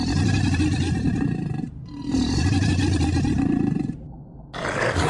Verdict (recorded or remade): recorded